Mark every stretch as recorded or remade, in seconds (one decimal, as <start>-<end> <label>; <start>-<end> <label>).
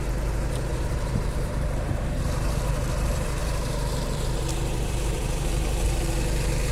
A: 0.0-6.7 remade